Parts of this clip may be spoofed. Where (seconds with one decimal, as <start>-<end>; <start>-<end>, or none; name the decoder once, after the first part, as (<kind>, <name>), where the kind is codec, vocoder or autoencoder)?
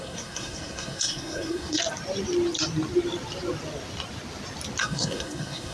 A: 0.0-1.8 (codec, SNAC); 4.8-5.7